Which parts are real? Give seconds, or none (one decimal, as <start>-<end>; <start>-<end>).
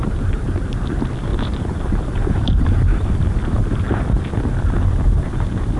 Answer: 0.7-1.3; 4.2-5.8